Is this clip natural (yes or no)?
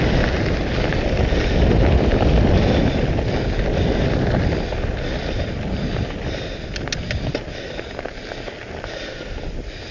yes